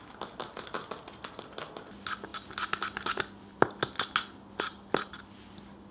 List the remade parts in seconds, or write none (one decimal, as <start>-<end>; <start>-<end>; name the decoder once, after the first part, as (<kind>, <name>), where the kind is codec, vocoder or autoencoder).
none